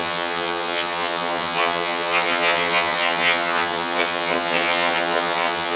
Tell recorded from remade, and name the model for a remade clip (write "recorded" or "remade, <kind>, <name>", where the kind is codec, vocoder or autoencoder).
remade, vocoder, HiFi-GAN